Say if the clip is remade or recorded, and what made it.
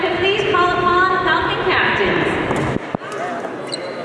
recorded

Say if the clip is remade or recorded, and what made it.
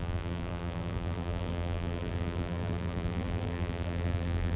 remade, vocoder, BigVGAN v2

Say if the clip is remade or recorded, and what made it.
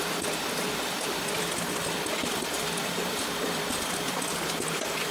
recorded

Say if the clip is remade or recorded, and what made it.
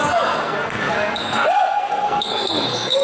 remade, codec, SNAC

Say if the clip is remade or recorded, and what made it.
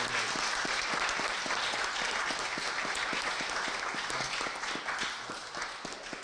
recorded